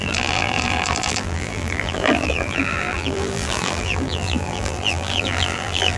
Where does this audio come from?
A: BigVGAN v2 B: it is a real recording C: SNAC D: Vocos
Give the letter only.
A